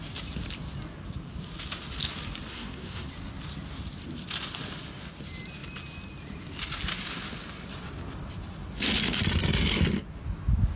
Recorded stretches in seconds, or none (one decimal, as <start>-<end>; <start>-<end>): 0.0-2.5; 3.1-10.8